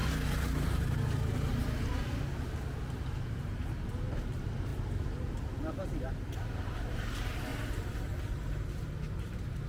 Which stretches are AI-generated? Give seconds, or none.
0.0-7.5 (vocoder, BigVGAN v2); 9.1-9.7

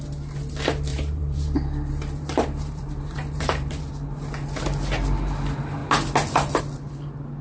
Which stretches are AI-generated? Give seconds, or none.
0.9-3.8 (vocoder, BigVGAN v2)